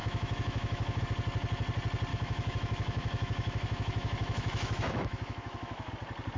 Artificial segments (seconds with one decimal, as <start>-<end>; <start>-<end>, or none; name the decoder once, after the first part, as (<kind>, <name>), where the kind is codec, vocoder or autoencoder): 0.0-1.0 (autoencoder, DAC-VAE); 2.1-5.9